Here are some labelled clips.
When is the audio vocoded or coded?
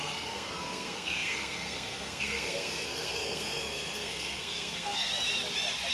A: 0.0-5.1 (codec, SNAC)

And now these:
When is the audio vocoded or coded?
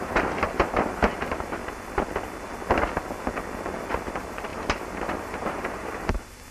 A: 0.0-1.6 (vocoder, BigVGAN v2); 4.0-6.5